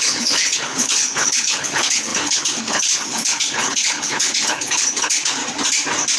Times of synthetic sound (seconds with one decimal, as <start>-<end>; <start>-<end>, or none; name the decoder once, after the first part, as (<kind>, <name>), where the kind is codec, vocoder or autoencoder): 0.0-5.4 (codec, HILCodec)